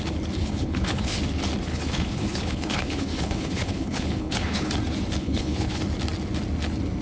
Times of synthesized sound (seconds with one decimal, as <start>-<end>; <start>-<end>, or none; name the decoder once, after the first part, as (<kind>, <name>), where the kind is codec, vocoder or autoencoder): 0.4-1.2 (codec, HILCodec); 1.7-4.7; 5.2-5.8